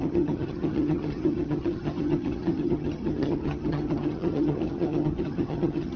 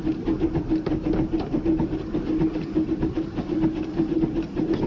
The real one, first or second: second